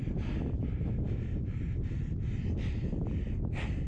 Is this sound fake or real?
real